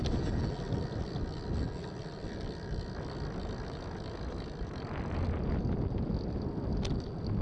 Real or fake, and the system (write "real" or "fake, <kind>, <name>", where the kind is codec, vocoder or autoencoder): real